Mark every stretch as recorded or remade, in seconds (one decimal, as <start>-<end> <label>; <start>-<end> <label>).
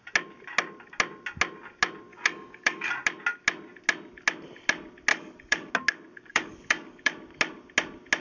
0.0-2.1 recorded; 2.1-2.9 remade; 2.9-5.1 recorded; 5.1-5.7 remade; 5.7-6.3 recorded; 6.3-7.1 remade; 7.1-8.2 recorded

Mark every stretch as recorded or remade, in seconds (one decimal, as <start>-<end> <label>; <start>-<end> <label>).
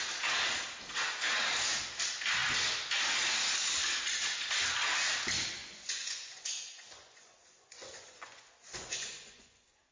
0.0-5.6 recorded; 5.6-9.9 remade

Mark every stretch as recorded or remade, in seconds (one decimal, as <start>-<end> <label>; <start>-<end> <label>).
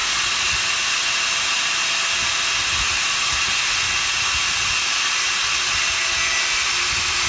0.0-7.3 recorded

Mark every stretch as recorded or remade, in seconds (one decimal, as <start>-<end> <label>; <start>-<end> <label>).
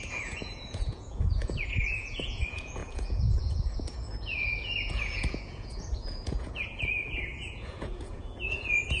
0.0-9.0 remade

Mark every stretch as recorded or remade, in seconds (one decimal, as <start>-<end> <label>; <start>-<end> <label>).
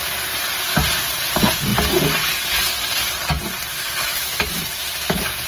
0.0-3.7 recorded; 3.7-4.4 remade; 4.4-5.5 recorded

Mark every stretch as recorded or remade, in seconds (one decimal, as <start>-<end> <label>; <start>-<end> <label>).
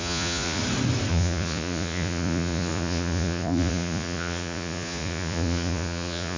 0.0-0.6 remade; 0.6-1.1 recorded; 1.1-6.4 remade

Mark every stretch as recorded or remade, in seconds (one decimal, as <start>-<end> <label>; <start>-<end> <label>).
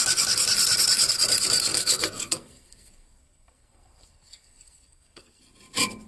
0.0-1.7 recorded; 1.7-5.4 remade; 5.4-6.1 recorded